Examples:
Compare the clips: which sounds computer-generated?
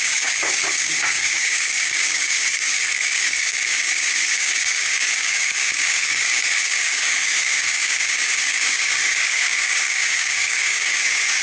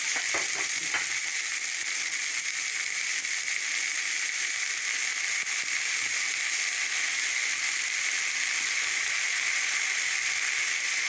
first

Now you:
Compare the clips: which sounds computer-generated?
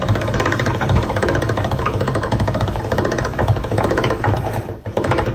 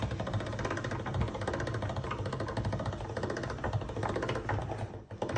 first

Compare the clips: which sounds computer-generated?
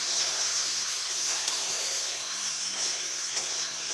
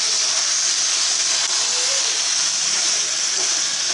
first